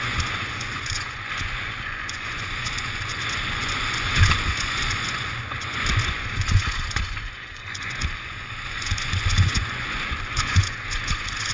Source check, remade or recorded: remade